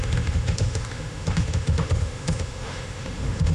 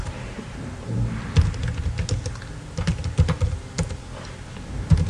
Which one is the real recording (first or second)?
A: second